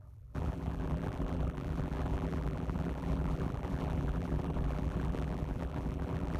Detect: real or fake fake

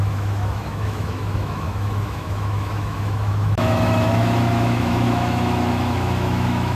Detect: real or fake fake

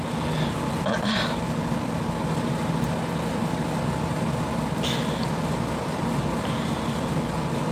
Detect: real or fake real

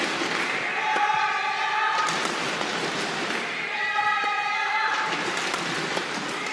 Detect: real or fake real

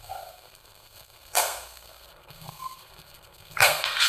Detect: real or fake fake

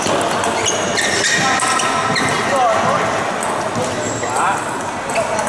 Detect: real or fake real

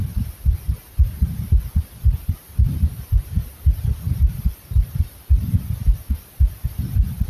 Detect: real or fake real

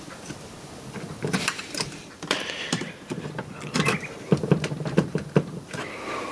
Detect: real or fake fake